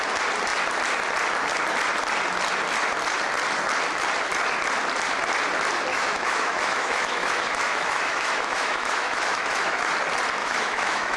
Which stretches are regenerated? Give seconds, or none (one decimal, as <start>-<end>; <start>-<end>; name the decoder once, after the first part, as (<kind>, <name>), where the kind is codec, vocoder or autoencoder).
5.9-9.8 (autoencoder, DAC-VAE); 10.4-11.2